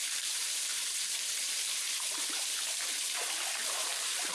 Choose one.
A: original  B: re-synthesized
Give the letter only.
B